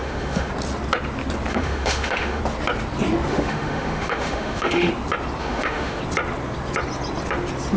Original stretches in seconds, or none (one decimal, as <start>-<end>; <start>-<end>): 0.5-1.5; 2.4-3.3; 4.9-5.4; 6.0-7.8

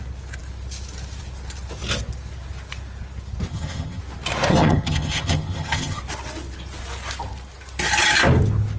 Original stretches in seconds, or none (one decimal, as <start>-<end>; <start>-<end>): 0.0-3.5; 4.0-4.5; 6.0-8.8

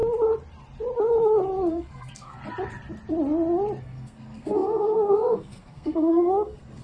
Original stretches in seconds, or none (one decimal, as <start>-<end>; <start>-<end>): 0.0-1.7; 2.4-3.8

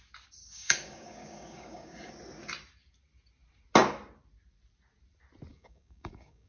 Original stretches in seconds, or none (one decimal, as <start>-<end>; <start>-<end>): 0.0-0.4; 2.1-5.5

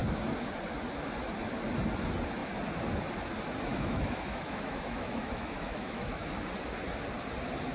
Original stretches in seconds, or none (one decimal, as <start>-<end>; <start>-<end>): 0.0-3.7; 6.3-7.7